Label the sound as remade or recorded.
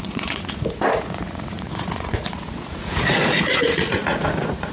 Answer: remade